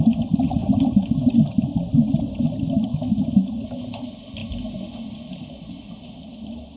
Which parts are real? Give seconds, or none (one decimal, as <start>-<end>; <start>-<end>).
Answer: 0.0-2.9; 3.5-6.8